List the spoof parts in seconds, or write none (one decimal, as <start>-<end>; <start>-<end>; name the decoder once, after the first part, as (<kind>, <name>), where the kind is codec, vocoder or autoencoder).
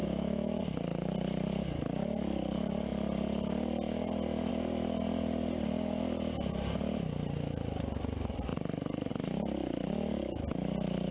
0.0-0.6 (autoencoder, DAC-VAE)